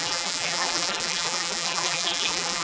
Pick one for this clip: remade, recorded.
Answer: remade